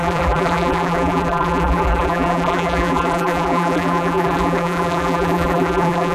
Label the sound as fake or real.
fake